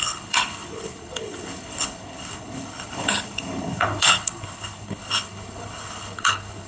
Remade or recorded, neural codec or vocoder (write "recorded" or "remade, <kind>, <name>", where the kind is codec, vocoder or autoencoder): remade, codec, HILCodec